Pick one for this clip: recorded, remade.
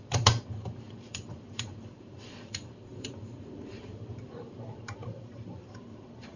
remade